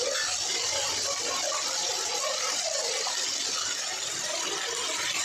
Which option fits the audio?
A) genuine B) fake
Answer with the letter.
A